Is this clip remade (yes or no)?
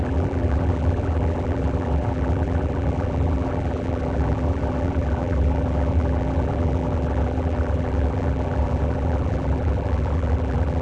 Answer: yes